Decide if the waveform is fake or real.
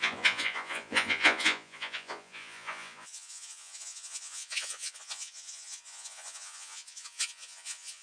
fake